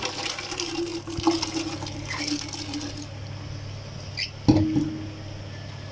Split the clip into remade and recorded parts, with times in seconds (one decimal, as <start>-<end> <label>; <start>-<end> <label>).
0.0-5.9 recorded